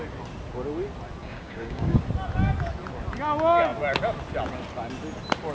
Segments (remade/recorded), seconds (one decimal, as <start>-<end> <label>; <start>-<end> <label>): 0.0-1.2 recorded; 1.2-2.0 remade; 2.0-5.5 recorded